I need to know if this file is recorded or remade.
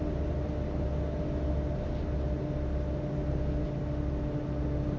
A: recorded